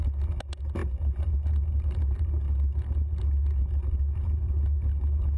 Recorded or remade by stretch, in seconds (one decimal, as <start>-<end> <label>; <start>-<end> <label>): 0.0-5.4 recorded